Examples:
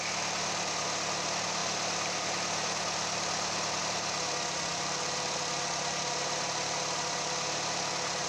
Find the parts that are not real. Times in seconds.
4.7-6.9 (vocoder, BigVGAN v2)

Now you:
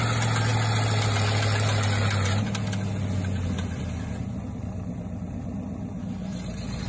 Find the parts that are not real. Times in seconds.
none

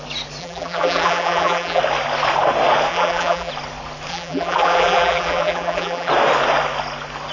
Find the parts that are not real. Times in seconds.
0.4-1.8 (vocoder, BigVGAN v2); 2.9-3.5; 4.1-6.1

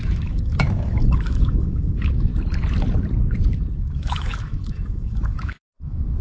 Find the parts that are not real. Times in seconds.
0.0-2.3 (autoencoder, DAC-VAE); 3.8-6.2

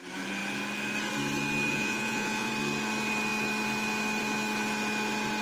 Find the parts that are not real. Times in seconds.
1.7-2.5 (vocoder, Vocos)